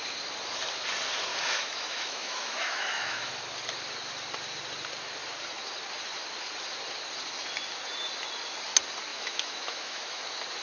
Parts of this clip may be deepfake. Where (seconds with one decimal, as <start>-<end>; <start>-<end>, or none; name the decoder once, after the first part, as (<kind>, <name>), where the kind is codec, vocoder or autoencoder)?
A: 1.3-3.3 (autoencoder, DAC-VAE); 9.1-10.2